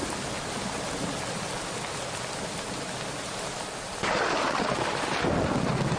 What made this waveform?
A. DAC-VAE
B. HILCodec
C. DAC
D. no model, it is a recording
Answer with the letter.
D